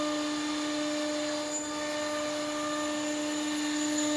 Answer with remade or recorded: recorded